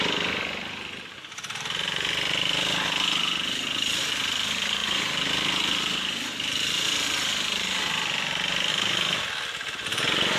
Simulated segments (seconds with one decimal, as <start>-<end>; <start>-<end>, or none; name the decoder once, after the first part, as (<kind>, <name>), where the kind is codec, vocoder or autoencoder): 8.7-9.2 (autoencoder, DAC-VAE)

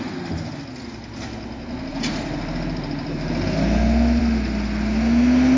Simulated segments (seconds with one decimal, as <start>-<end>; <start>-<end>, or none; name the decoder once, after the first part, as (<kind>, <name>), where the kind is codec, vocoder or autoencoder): none